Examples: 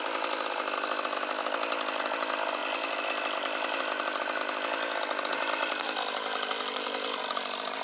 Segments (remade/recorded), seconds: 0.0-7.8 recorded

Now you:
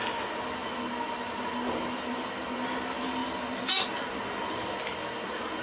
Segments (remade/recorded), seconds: 0.0-5.6 recorded

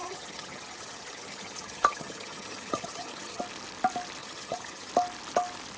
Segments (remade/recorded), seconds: 0.0-3.4 remade; 3.4-4.2 recorded; 4.2-4.9 remade; 4.9-5.8 recorded

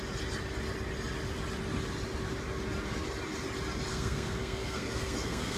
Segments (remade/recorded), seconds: 0.0-3.9 recorded; 3.9-5.6 remade

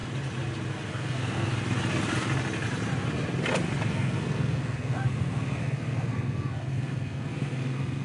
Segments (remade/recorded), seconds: 0.0-0.9 recorded; 0.9-1.5 remade; 1.5-3.9 recorded; 3.9-8.0 remade